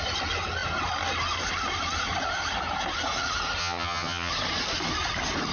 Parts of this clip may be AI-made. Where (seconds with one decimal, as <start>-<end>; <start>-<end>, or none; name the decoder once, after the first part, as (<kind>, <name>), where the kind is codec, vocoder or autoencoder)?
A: 3.6-4.3 (vocoder, HiFi-GAN)